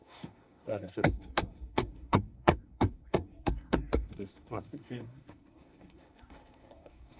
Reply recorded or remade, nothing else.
remade